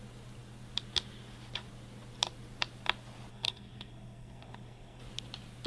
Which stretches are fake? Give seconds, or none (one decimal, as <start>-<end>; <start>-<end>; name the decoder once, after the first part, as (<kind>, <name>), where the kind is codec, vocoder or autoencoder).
3.3-5.0 (codec, SNAC)